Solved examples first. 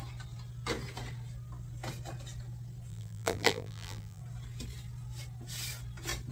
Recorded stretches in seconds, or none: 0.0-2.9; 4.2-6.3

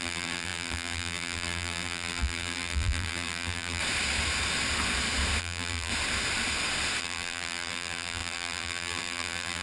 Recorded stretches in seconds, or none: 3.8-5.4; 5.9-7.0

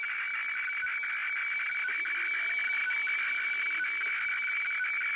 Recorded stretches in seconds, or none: 0.0-1.2; 2.1-2.8; 3.6-5.2

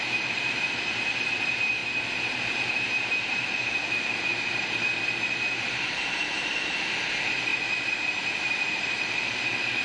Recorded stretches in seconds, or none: 1.8-2.9